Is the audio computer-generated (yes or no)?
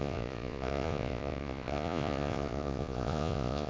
yes